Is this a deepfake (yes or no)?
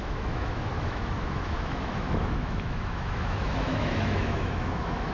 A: yes